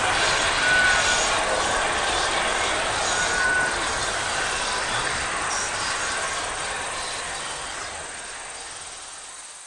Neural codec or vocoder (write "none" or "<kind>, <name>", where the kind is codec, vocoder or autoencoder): none